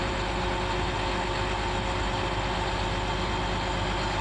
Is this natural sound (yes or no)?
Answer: yes